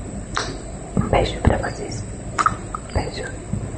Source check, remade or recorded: remade